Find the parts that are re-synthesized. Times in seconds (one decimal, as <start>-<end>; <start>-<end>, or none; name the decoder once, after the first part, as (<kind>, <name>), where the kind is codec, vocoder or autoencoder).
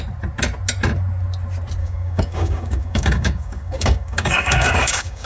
1.8-5.3 (codec, DAC)